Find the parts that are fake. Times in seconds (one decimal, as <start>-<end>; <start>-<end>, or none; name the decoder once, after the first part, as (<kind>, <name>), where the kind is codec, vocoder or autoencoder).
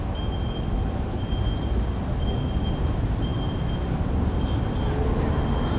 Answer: none